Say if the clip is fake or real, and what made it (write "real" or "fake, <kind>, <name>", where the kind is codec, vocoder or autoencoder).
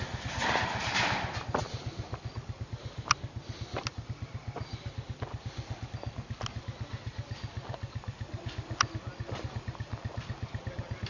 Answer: real